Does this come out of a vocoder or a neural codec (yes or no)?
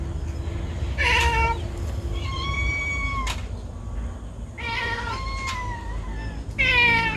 no